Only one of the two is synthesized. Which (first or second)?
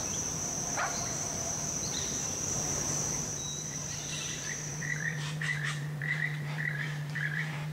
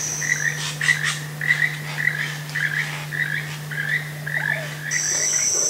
first